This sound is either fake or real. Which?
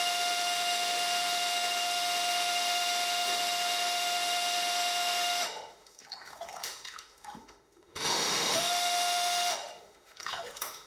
fake